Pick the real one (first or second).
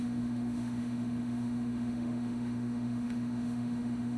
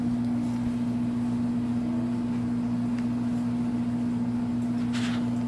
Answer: second